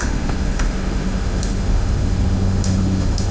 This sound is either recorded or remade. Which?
remade